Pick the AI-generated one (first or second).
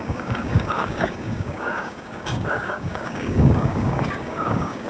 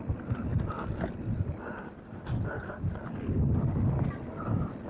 first